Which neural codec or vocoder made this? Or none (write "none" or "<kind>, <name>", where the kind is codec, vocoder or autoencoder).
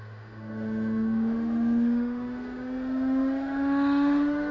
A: autoencoder, DAC-VAE